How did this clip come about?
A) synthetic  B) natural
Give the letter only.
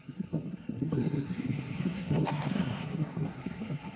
A